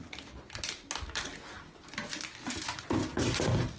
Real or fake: real